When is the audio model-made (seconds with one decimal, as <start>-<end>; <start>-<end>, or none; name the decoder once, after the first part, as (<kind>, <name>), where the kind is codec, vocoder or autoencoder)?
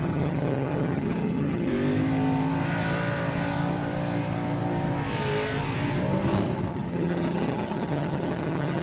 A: 0.0-1.7 (vocoder, HiFi-GAN); 6.7-8.8